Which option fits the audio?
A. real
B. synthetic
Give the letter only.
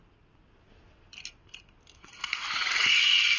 A